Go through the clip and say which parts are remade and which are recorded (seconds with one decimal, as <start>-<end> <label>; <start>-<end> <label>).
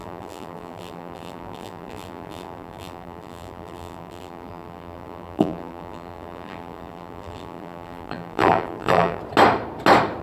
0.0-9.2 remade; 9.2-10.2 recorded